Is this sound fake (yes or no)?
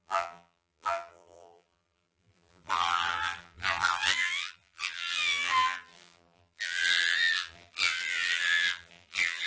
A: yes